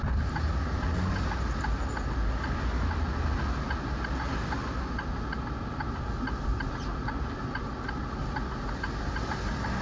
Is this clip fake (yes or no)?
no